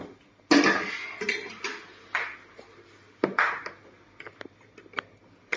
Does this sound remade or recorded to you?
recorded